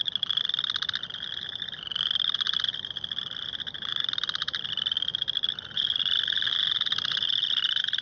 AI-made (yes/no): no